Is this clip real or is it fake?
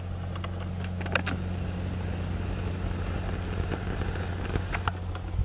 real